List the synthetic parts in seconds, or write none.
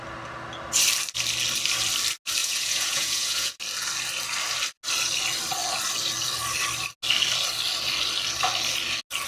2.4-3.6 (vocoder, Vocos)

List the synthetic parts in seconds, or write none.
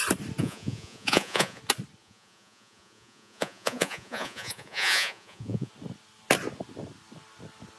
0.4-1.6 (vocoder, Vocos); 2.0-5.7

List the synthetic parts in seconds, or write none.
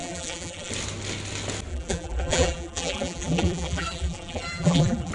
0.0-0.7 (vocoder, BigVGAN v2); 1.7-5.1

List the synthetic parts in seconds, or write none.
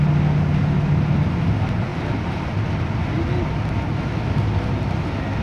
none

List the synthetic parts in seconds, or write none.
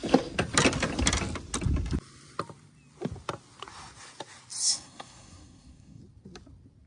4.6-6.0 (codec, SNAC)